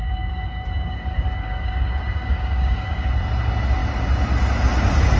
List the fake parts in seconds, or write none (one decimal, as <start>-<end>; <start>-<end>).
0.0-3.1